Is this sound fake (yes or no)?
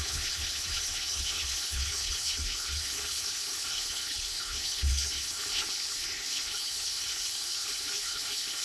yes